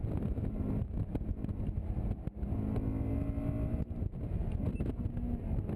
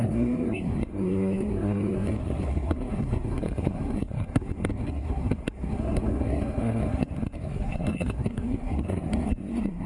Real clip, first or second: first